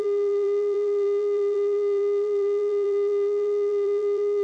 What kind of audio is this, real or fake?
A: fake